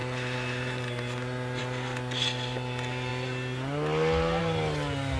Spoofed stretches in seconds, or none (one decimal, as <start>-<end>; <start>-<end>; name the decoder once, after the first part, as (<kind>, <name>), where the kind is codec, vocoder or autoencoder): none